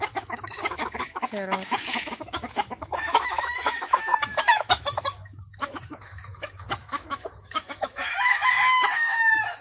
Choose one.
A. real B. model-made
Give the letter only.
B